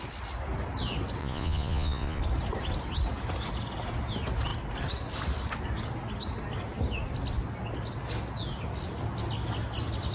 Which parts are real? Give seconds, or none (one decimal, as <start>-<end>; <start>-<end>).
0.0-1.2; 2.2-10.1